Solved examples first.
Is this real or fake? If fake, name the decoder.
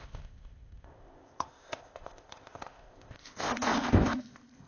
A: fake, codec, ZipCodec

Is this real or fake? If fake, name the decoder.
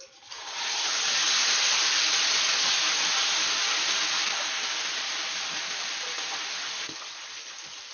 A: fake, vocoder, BigVGAN v2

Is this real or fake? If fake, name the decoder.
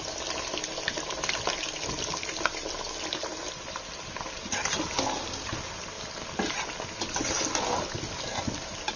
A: real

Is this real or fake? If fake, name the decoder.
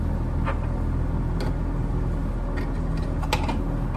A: real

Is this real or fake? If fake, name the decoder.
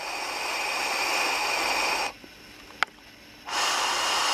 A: real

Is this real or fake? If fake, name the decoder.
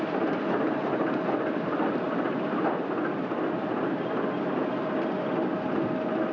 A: real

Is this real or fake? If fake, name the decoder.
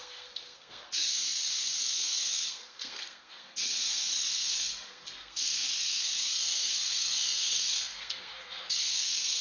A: fake, codec, SNAC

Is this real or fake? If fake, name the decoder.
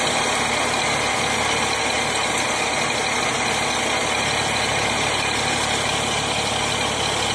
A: real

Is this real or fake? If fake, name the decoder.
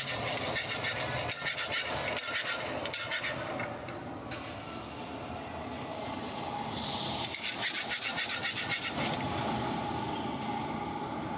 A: real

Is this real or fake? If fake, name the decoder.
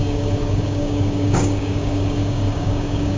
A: fake, codec, DAC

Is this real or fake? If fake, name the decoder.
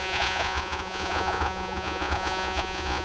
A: fake, vocoder, Vocos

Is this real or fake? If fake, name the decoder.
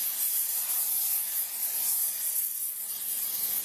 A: real